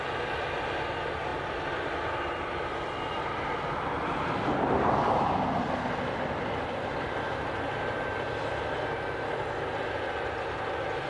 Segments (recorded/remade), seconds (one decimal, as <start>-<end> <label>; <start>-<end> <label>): 0.0-11.1 recorded

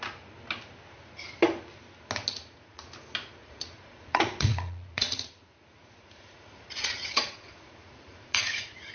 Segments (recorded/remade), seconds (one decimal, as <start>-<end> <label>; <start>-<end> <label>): 0.0-2.3 recorded; 2.3-2.9 remade; 2.9-3.4 recorded; 3.4-8.9 remade

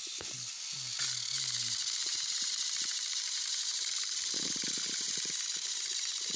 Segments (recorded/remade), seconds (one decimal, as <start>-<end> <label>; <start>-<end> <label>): 0.0-2.1 recorded; 2.1-4.4 remade; 4.4-6.4 recorded

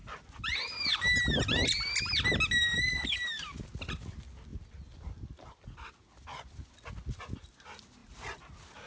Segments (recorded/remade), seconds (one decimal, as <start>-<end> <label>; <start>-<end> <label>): 0.0-8.9 recorded

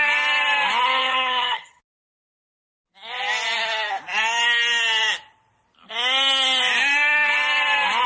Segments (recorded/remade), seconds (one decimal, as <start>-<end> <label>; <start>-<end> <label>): 0.0-1.0 recorded; 1.0-1.8 remade; 1.8-8.1 recorded

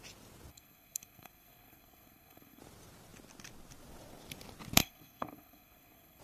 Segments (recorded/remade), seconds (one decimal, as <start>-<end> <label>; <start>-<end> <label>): 0.0-0.5 recorded; 0.5-2.6 remade; 2.6-4.8 recorded; 4.8-6.2 remade

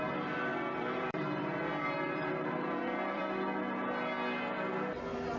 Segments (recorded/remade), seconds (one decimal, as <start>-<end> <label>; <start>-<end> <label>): 0.0-0.5 recorded; 0.5-3.2 remade; 3.2-5.4 recorded